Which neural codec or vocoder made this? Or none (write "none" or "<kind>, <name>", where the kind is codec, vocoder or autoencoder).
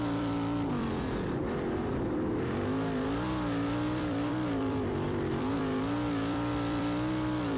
vocoder, BigVGAN v2